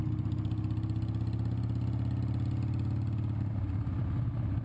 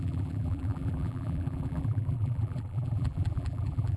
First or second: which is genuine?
first